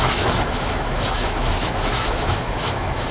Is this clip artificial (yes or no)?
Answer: yes